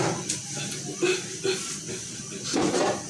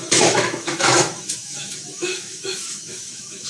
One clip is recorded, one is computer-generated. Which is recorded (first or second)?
first